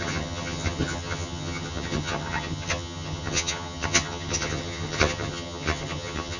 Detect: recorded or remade remade